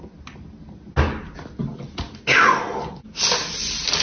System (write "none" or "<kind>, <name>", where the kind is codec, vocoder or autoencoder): none